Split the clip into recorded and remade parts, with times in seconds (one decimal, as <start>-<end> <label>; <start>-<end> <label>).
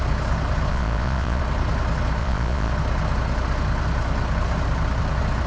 0.0-0.7 recorded; 0.7-1.4 remade; 1.4-2.2 recorded; 2.2-2.7 remade; 2.7-5.5 recorded